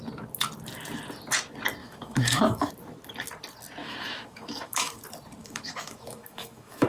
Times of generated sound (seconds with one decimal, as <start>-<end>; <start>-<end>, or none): 1.8-2.7; 3.8-5.0; 5.4-6.9